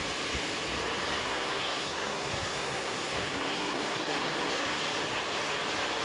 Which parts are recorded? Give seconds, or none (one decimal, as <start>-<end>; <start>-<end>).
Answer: 0.0-1.2; 4.8-6.0